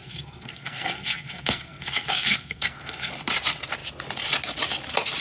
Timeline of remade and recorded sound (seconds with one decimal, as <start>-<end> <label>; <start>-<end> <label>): 0.0-3.1 remade; 3.1-5.2 recorded